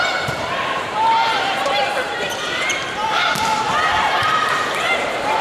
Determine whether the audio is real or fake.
fake